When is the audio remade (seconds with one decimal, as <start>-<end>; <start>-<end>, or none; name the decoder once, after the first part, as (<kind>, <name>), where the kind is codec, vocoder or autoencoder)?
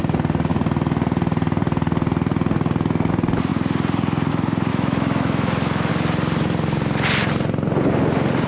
4.7-5.9 (autoencoder, DAC-VAE)